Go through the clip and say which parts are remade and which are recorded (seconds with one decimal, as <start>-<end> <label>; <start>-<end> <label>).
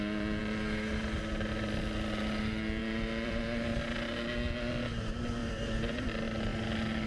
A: 0.0-2.8 recorded; 2.8-3.4 remade; 3.4-5.4 recorded; 5.4-6.1 remade; 6.1-7.1 recorded